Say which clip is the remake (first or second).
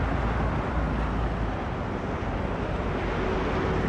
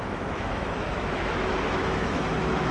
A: second